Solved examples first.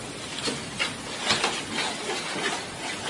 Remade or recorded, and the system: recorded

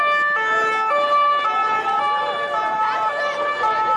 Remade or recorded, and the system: recorded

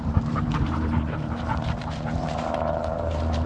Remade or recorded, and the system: remade, vocoder, BigVGAN v2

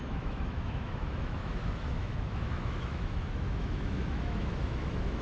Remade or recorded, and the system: remade, autoencoder, DAC-VAE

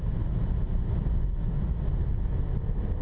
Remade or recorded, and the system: recorded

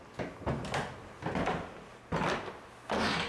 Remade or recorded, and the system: recorded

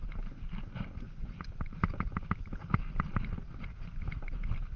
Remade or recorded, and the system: recorded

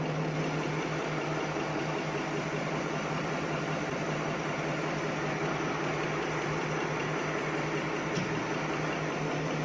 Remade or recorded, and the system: recorded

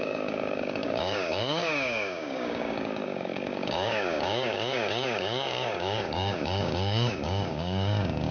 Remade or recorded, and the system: remade, codec, DAC